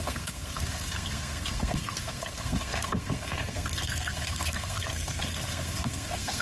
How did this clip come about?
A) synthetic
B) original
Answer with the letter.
A